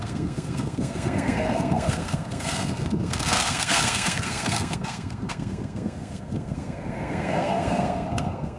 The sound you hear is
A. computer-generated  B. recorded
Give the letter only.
A